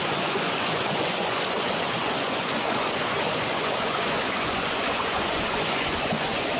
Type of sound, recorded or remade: remade